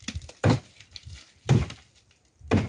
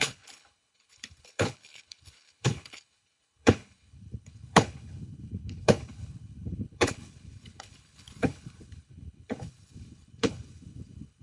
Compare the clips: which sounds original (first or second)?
first